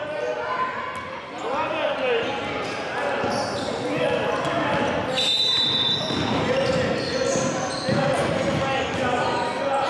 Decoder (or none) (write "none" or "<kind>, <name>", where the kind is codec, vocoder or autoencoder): none